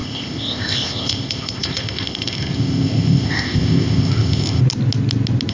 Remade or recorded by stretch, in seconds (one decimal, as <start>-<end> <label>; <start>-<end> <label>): 0.0-4.6 remade; 4.6-5.5 recorded